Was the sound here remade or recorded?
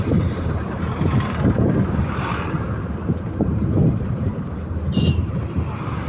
remade